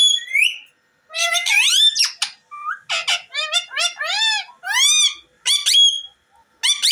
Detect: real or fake real